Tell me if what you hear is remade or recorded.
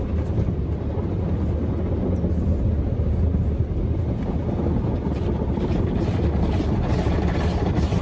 recorded